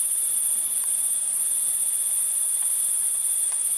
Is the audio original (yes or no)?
no